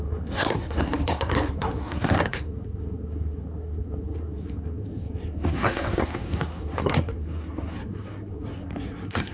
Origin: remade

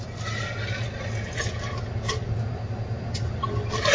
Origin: recorded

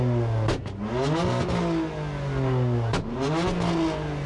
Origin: recorded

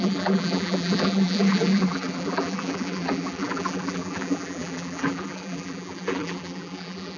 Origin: remade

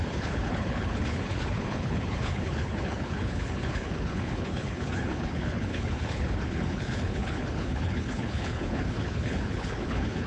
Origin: remade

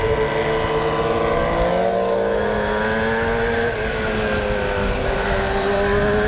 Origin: recorded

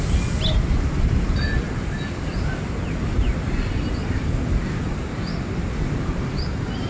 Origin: recorded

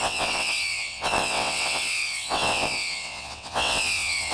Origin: remade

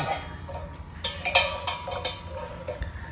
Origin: recorded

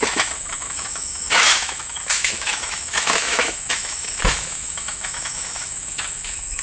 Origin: remade